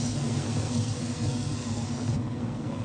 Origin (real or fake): fake